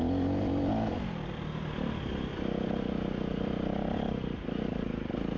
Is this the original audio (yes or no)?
yes